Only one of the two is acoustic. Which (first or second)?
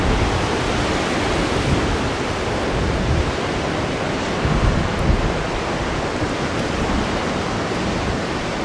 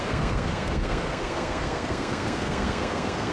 first